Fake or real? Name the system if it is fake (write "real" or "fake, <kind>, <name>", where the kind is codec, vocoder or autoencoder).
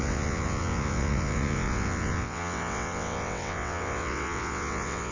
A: fake, vocoder, WaveNeXt